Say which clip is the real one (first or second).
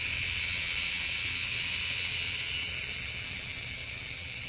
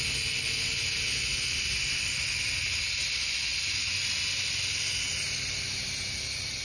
second